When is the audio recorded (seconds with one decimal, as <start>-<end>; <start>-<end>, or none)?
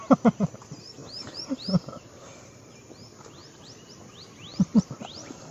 0.0-1.0; 2.7-4.5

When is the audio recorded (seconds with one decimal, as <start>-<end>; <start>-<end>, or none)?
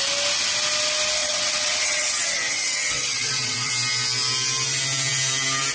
0.0-1.2; 3.7-5.7